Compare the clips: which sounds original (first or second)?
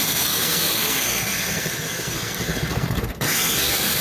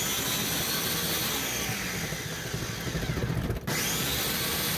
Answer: second